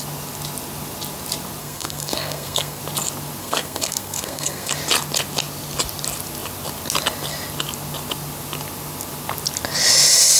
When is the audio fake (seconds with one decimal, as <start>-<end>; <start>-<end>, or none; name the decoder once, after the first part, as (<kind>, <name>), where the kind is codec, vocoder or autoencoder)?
1.6-2.8 (codec, SNAC); 3.4-4.7